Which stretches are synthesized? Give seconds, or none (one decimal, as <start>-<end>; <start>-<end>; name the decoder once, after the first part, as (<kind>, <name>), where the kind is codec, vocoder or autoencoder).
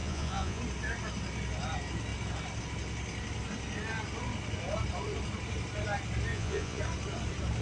0.0-0.6 (vocoder, Vocos); 6.3-6.8